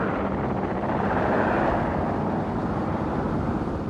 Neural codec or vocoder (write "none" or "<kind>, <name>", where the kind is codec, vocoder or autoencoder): vocoder, BigVGAN v2